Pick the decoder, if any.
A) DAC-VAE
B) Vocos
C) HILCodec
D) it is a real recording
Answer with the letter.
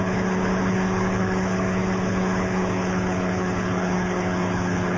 C